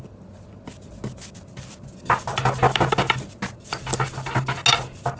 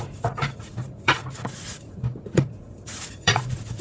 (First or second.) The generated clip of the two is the second